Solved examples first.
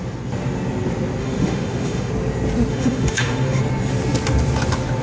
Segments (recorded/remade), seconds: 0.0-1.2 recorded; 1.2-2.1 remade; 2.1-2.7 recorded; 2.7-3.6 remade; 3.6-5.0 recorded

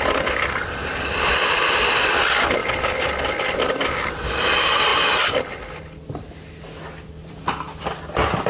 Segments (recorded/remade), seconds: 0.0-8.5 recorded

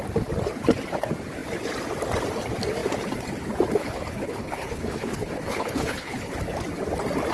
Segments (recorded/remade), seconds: 0.0-3.8 recorded; 3.8-6.4 remade; 6.4-7.3 recorded